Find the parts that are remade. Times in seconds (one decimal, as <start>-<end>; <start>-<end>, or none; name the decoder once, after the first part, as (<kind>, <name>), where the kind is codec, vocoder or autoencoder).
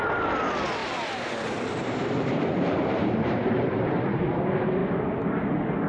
0.8-4.3 (vocoder, BigVGAN v2)